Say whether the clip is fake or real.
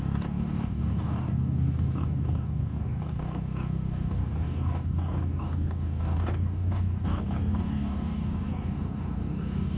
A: fake